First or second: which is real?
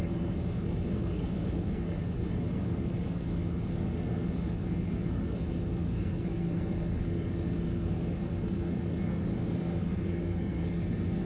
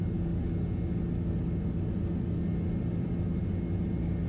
second